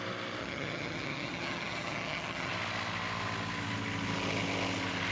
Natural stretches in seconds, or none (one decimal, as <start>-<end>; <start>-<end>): 0.0-0.4; 2.5-5.1